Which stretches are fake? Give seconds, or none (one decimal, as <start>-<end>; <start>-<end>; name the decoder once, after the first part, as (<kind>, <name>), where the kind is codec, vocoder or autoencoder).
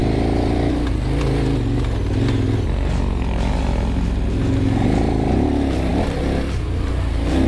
none